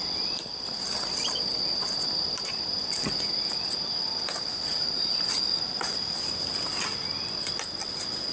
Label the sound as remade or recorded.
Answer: remade